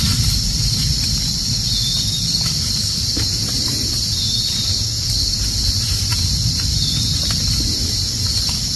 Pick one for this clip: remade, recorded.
recorded